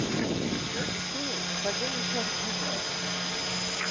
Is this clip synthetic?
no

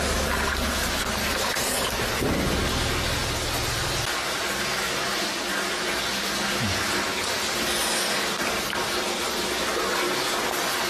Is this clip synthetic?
no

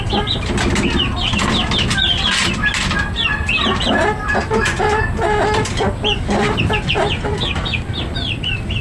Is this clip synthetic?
no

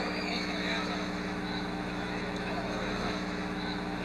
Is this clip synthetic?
yes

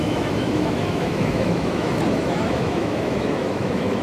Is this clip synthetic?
yes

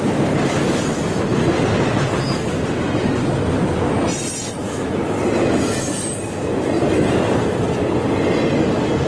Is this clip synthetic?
no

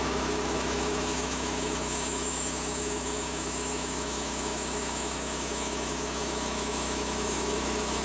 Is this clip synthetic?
yes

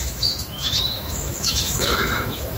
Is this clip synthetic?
yes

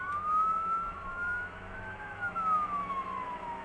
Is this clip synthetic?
yes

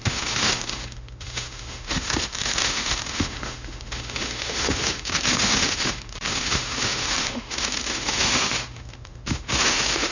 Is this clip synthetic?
yes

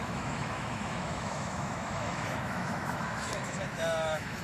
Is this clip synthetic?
yes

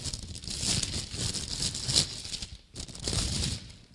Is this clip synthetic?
no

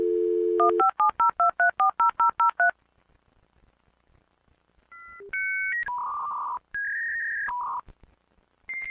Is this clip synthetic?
no